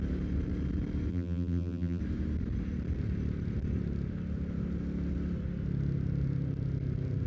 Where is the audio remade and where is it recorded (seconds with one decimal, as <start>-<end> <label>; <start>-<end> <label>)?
0.0-1.1 recorded; 1.1-2.0 remade; 2.0-7.3 recorded